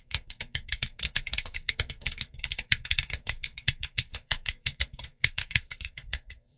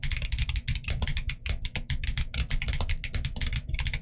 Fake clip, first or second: first